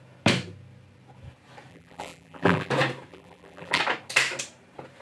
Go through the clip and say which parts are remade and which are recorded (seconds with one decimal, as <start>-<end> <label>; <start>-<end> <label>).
0.0-1.7 recorded; 1.7-2.7 remade; 2.7-3.1 recorded; 3.1-3.8 remade; 3.8-5.0 recorded